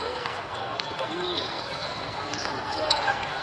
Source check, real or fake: fake